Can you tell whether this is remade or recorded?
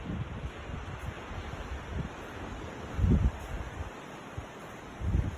recorded